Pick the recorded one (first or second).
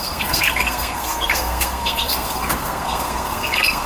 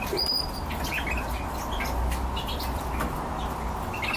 second